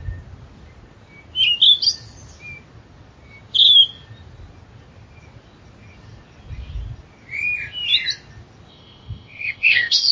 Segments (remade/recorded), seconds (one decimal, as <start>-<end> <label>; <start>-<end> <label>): 0.0-8.7 recorded; 8.7-10.1 remade